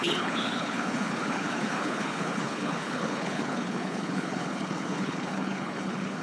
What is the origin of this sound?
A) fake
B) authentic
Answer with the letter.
A